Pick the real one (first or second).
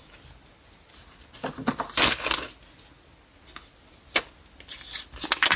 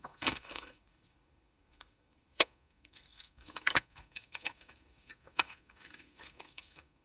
first